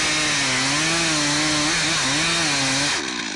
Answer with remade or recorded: recorded